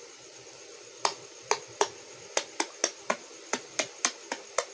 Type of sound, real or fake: real